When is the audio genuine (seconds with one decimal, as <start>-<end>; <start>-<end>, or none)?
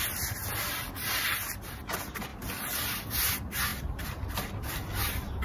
0.0-2.3; 3.3-5.4